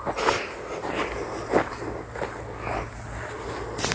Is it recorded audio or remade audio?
recorded